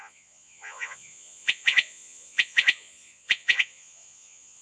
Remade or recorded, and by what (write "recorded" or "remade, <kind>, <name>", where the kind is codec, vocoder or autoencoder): remade, vocoder, Vocos